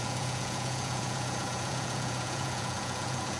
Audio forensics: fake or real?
fake